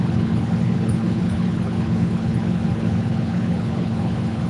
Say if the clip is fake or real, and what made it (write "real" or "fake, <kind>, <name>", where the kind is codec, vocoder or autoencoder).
fake, codec, HILCodec